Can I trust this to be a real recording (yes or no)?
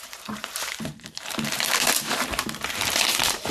no